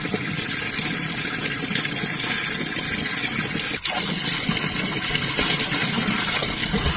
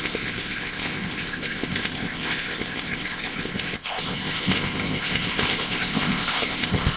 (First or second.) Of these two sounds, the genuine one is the first